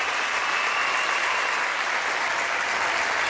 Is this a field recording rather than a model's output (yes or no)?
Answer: yes